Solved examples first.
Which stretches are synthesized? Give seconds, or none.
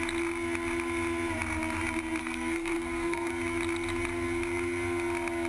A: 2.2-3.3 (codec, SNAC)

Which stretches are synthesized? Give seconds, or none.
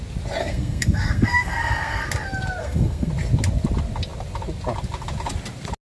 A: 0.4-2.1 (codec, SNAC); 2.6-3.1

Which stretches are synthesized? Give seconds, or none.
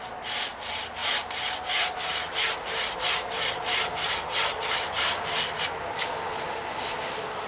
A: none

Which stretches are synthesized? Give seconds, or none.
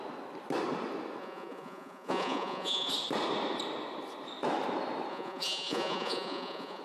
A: 1.2-2.9 (vocoder, Vocos); 5.1-6.8